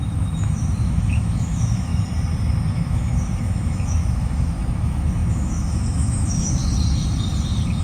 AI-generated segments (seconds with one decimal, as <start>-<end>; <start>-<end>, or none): 0.0-1.9; 2.7-6.6